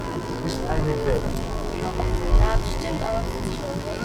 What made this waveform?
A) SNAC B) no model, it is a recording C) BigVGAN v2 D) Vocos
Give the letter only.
C